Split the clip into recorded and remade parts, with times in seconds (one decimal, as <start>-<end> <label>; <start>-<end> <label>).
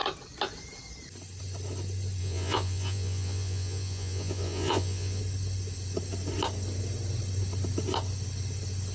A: 0.0-2.2 recorded; 2.2-5.2 remade; 5.2-8.9 recorded